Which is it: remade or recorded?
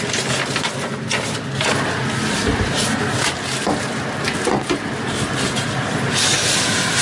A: recorded